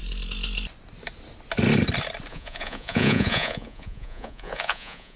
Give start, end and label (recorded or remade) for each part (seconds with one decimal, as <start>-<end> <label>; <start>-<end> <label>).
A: 0.0-2.3 recorded; 2.3-5.2 remade